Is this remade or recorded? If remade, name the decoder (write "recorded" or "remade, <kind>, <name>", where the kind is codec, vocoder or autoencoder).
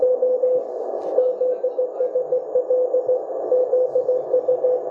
recorded